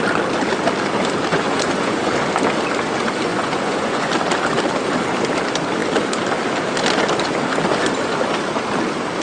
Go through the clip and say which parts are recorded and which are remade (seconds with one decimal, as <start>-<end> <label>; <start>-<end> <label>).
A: 0.0-1.3 recorded; 1.3-2.1 remade; 2.1-3.3 recorded; 3.3-4.1 remade; 4.1-9.2 recorded